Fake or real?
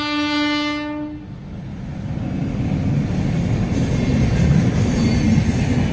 real